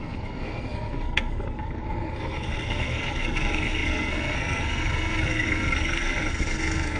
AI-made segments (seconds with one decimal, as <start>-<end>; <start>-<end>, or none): 0.0-7.0